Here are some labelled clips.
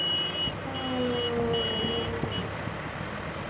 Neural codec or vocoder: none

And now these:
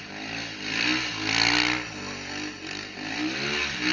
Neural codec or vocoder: none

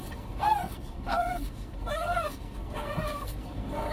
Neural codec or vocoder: codec, SNAC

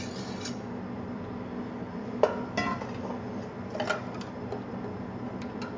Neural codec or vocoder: none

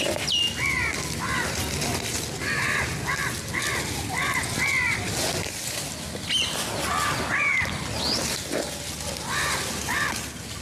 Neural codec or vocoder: none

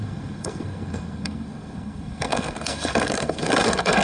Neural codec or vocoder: codec, SNAC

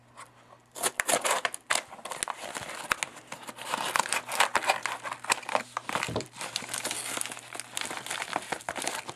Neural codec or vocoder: none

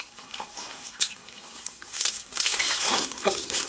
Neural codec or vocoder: codec, SNAC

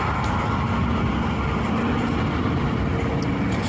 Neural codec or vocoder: none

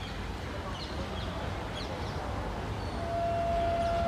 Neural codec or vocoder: none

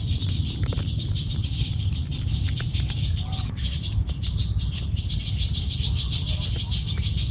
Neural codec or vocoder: none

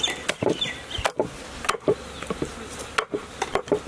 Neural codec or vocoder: none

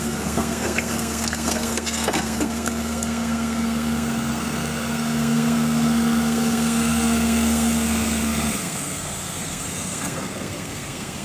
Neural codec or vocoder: codec, SNAC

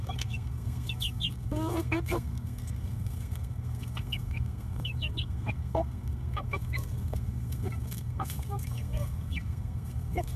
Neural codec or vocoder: codec, SNAC